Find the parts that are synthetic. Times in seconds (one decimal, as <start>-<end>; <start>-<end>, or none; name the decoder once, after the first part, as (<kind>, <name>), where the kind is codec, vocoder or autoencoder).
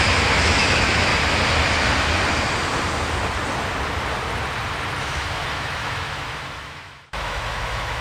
0.0-1.1 (autoencoder, DAC-VAE); 5.0-8.0